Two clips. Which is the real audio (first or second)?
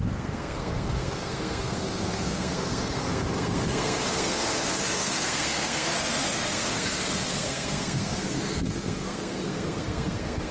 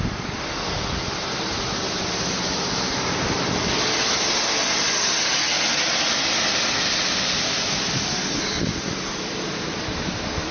second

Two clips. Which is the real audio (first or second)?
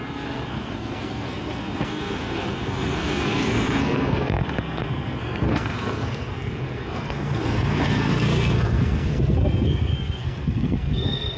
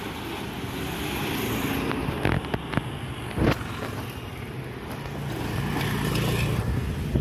second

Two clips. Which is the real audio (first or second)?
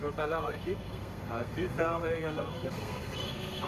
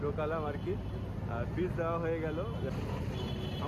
second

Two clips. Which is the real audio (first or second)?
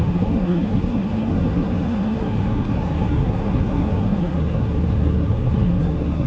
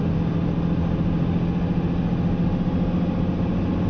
second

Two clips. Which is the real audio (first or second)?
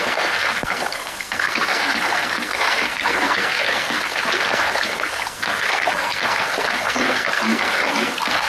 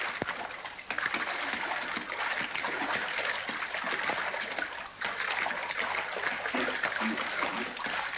second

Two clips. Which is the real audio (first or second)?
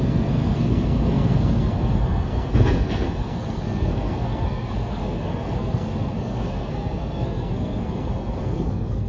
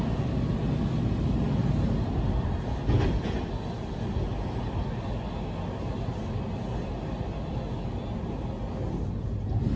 second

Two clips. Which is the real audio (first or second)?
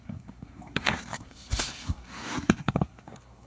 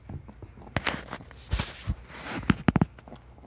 second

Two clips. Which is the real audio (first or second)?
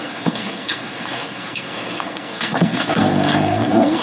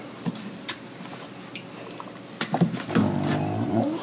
second